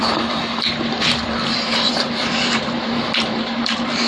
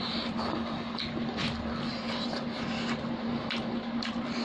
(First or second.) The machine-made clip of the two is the first